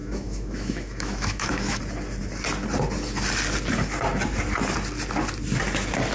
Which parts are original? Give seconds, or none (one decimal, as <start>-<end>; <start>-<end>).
1.8-6.1